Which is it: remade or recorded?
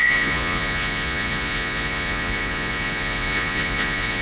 remade